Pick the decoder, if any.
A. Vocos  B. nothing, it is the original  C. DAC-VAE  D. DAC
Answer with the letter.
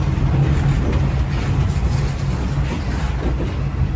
B